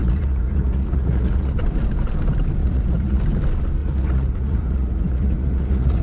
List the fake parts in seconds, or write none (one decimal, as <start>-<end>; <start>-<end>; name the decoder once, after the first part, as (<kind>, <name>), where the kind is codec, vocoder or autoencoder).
0.0-1.5 (vocoder, Vocos); 2.6-3.2; 3.8-6.0